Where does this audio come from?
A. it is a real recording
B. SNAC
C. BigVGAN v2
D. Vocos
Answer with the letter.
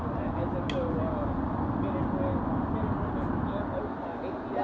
A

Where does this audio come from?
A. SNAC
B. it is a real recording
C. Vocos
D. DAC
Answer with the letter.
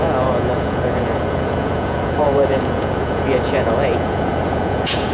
C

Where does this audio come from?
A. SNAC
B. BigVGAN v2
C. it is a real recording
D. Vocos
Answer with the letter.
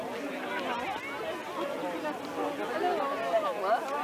C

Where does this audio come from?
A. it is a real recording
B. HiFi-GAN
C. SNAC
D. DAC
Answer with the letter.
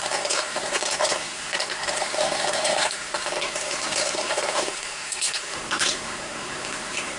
C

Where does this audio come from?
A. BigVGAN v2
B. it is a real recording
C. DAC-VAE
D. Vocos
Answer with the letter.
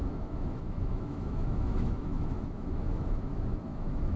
C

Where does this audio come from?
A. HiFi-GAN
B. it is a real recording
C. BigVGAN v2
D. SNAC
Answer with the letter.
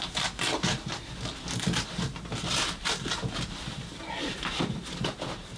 B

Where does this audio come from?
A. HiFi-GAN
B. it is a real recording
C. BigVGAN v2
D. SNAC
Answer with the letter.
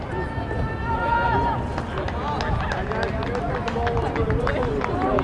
B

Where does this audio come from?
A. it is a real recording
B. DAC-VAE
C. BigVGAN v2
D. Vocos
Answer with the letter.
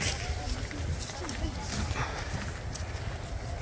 A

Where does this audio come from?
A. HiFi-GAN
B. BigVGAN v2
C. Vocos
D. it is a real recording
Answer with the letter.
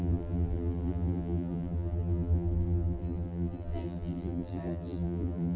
B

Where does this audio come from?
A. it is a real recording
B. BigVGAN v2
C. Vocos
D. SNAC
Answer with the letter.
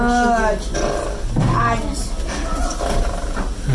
A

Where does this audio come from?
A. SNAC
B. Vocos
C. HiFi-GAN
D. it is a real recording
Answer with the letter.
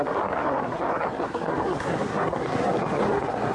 A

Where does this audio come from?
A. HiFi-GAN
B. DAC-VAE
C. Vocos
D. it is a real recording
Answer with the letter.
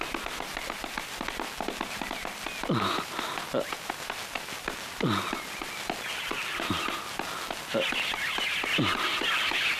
D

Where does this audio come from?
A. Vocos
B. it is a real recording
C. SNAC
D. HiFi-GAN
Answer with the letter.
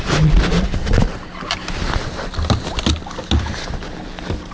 B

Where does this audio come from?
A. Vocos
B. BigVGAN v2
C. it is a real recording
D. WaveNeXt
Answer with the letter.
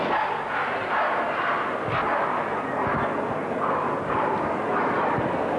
C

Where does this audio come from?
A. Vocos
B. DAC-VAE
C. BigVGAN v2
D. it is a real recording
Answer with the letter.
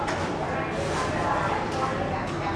D